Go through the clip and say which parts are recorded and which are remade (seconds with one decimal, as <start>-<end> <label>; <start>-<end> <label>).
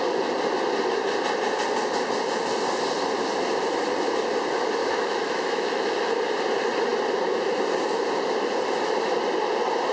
0.0-4.8 recorded; 4.8-5.9 remade; 5.9-9.9 recorded